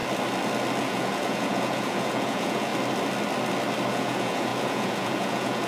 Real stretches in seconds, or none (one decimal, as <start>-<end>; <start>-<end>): 0.0-0.8; 2.7-3.9